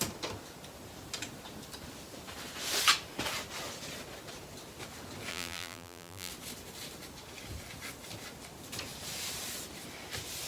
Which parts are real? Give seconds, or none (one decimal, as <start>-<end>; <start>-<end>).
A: 0.0-5.3; 6.3-10.5